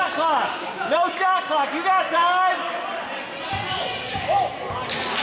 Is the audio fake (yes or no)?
no